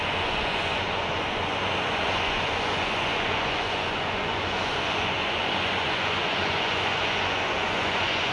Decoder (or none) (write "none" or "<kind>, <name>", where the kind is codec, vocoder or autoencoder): vocoder, Vocos